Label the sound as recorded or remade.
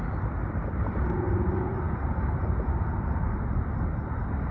recorded